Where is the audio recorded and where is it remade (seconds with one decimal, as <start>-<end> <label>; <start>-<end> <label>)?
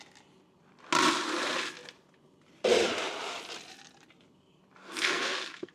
0.0-4.8 recorded; 4.8-5.7 remade